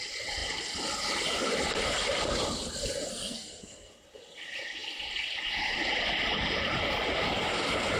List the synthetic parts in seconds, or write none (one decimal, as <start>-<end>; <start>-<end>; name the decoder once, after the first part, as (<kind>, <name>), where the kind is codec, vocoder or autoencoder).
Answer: 3.1-3.9 (codec, SNAC)